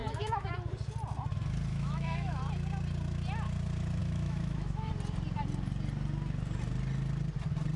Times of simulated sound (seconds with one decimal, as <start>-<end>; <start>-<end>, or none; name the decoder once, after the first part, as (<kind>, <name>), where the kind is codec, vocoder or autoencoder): 0.0-0.5 (autoencoder, DAC-VAE); 1.7-2.4; 4.0-4.9